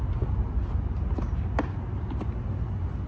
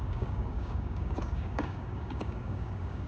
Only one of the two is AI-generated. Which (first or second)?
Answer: second